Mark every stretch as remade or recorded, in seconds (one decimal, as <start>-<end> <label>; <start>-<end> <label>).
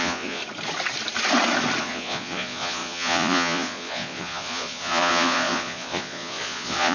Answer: 0.0-0.4 remade; 0.4-1.8 recorded; 1.8-6.9 remade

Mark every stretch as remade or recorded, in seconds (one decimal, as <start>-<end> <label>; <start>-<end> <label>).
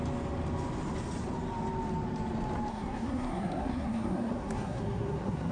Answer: 0.0-2.7 recorded; 2.7-5.5 remade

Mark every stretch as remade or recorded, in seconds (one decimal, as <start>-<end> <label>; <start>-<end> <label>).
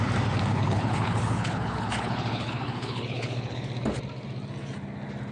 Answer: 0.0-0.5 recorded; 0.5-3.7 remade; 3.7-5.3 recorded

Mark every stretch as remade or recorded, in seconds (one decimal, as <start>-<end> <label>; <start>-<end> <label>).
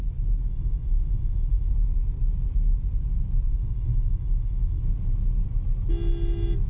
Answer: 0.0-0.5 recorded; 0.5-1.7 remade; 1.7-3.5 recorded; 3.5-4.8 remade; 4.8-6.7 recorded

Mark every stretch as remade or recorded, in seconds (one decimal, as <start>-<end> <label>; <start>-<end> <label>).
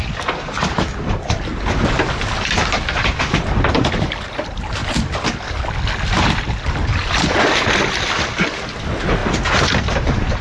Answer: 0.0-10.4 recorded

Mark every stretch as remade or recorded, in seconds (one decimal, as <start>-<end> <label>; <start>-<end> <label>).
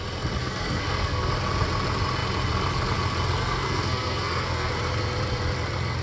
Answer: 0.0-0.4 recorded; 0.4-1.3 remade; 1.3-3.4 recorded; 3.4-4.7 remade; 4.7-6.0 recorded